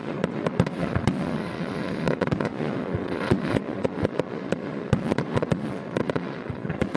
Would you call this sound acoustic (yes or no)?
no